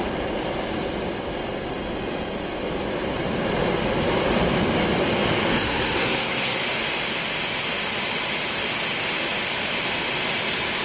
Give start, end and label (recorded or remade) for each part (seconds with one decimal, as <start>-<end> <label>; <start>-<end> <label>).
0.0-5.5 recorded; 5.5-6.6 remade; 6.6-10.8 recorded